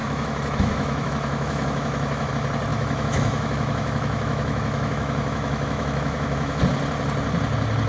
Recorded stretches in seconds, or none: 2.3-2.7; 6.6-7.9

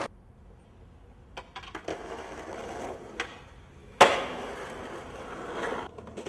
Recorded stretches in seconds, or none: 0.0-1.9; 2.4-3.8; 4.5-6.3

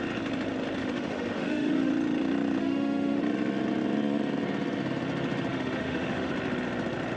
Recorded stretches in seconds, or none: 0.0-0.8; 1.9-2.6; 3.2-5.5; 6.3-7.2